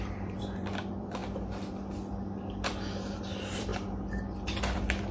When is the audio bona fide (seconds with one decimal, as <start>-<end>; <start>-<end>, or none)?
1.2-3.2; 3.7-4.6